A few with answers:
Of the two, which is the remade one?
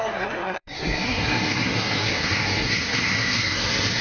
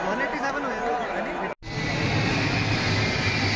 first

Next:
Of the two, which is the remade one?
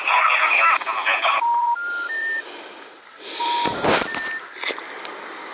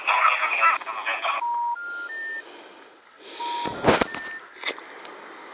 first